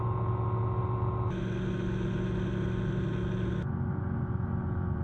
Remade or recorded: recorded